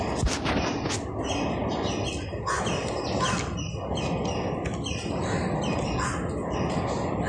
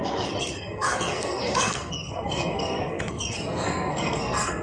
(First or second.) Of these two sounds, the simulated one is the second